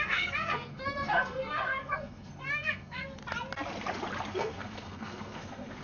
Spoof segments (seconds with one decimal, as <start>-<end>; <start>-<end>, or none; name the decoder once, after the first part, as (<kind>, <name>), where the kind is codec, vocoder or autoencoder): 0.0-3.2 (codec, SNAC); 4.3-5.8